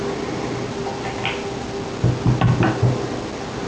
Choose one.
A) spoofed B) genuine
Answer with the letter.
B